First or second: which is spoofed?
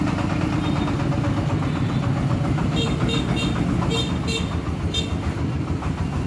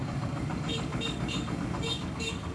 second